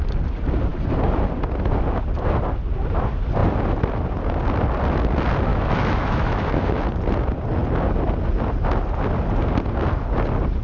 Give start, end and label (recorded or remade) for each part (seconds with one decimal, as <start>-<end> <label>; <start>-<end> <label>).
0.0-5.5 recorded; 5.5-6.8 remade; 6.8-10.6 recorded